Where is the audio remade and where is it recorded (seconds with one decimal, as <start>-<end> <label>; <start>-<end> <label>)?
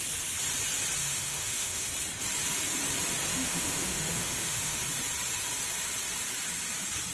0.0-1.0 recorded; 1.0-1.9 remade; 1.9-3.3 recorded; 3.3-4.8 remade; 4.8-7.1 recorded